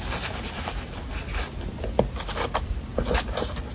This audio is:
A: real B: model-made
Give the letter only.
A